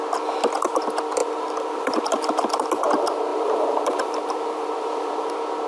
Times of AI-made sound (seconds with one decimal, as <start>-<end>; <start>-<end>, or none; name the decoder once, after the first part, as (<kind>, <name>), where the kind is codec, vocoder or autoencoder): 1.2-2.5 (vocoder, BigVGAN v2); 3.3-5.3